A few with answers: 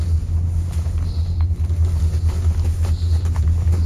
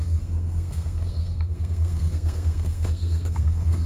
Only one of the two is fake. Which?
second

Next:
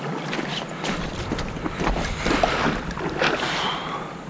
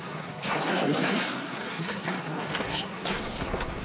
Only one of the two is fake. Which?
second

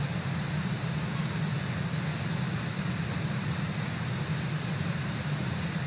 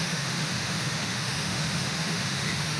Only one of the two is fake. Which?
second